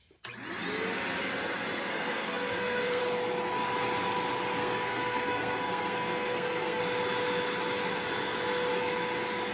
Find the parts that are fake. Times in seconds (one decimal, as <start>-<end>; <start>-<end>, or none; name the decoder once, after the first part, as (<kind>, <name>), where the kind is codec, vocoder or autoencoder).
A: 1.9-3.0 (codec, SNAC); 4.6-6.8